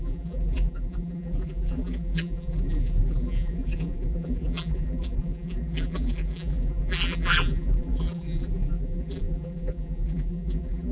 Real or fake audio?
fake